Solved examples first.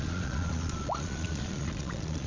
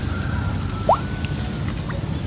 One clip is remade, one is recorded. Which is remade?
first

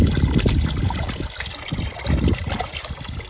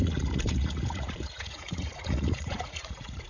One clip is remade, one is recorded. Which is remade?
second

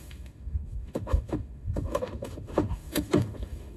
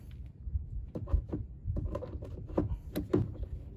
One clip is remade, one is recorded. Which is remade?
first